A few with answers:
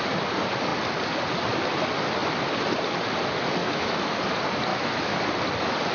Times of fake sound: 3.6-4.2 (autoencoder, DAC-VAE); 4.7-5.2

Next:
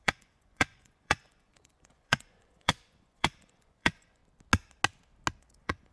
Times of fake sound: 0.0-4.2 (vocoder, Vocos); 5.4-5.9

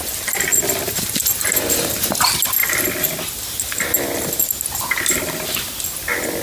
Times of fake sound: none